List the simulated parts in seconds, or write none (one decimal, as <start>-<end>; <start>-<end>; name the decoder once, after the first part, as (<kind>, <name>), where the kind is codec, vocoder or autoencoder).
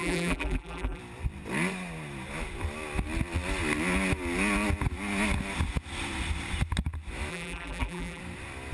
0.0-1.0 (vocoder, BigVGAN v2); 7.3-8.2